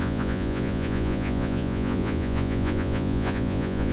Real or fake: fake